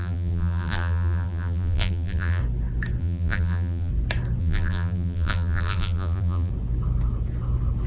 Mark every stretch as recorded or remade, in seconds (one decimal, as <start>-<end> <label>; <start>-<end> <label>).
0.0-2.4 remade; 2.4-3.0 recorded; 3.0-3.9 remade; 3.9-4.4 recorded; 4.4-6.5 remade; 6.5-7.9 recorded